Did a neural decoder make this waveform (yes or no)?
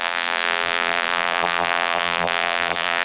yes